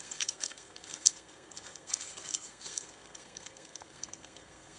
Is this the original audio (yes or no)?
no